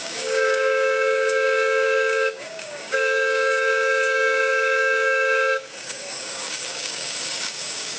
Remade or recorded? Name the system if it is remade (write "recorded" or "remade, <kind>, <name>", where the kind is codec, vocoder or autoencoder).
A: remade, codec, DAC